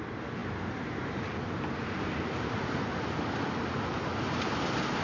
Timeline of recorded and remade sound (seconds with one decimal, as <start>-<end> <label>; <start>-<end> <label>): 0.0-0.4 recorded; 0.4-1.3 remade; 1.3-5.0 recorded